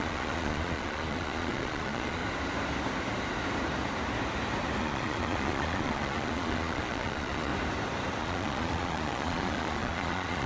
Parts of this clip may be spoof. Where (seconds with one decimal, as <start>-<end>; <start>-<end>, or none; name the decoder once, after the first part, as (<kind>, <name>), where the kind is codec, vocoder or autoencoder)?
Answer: 0.0-2.2 (vocoder, Vocos); 4.8-7.5; 8.2-10.5